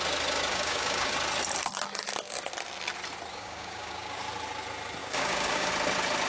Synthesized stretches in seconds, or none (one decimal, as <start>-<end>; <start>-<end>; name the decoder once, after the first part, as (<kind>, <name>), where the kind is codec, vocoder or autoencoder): 0.5-1.1 (codec, DAC); 3.3-4.2; 5.0-5.7